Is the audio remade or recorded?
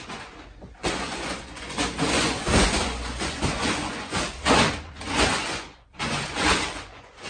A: remade